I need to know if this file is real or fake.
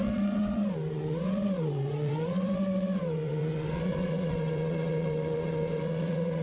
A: fake